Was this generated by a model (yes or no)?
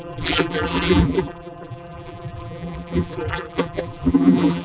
yes